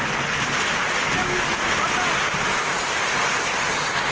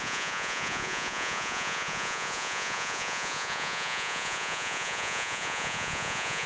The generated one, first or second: second